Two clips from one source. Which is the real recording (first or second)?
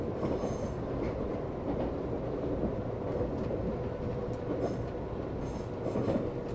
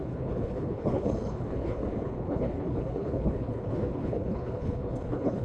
first